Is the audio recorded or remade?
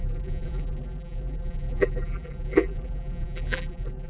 remade